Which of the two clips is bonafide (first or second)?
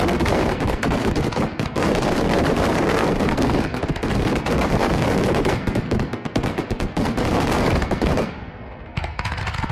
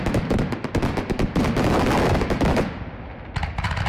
second